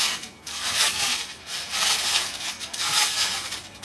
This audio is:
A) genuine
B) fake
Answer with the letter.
B